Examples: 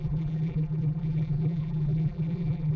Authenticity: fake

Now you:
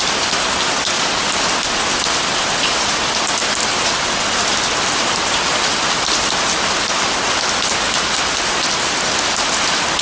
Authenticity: real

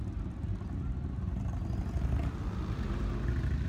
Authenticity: real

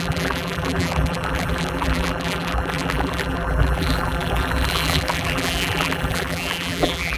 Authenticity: fake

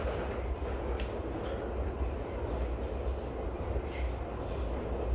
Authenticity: real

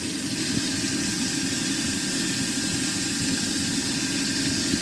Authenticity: real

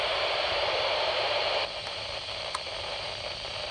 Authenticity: fake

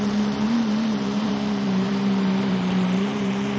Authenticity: fake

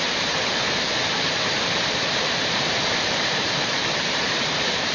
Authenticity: fake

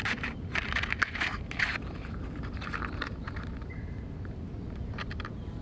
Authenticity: fake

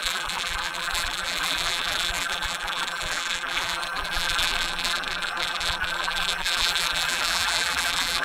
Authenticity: fake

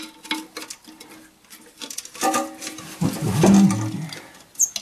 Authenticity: real